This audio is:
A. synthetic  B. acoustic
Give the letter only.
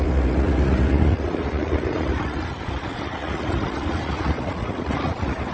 A